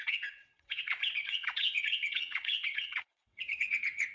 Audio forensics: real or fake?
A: fake